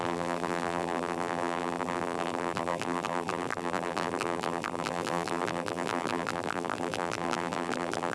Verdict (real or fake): fake